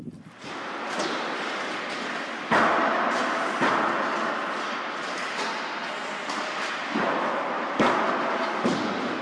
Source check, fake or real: real